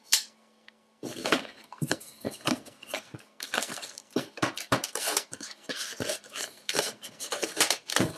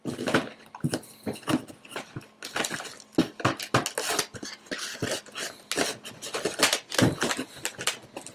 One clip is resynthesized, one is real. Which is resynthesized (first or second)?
first